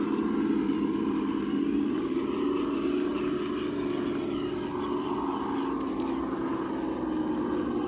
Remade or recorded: recorded